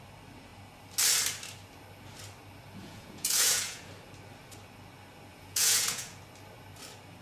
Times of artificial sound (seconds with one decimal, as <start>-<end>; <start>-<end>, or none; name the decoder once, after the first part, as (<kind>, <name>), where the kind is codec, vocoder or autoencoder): 2.8-3.9 (vocoder, Vocos); 5.3-6.2